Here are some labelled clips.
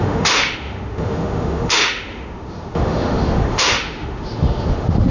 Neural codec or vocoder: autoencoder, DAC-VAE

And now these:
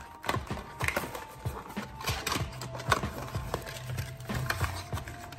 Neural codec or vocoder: none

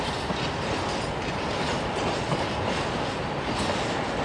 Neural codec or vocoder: none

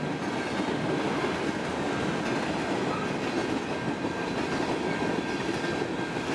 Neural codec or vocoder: none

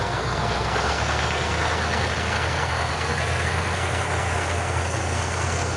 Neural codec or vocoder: codec, SNAC